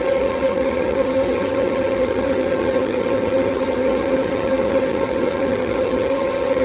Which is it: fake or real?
fake